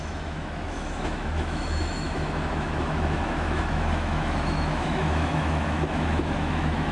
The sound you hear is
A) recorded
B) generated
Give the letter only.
B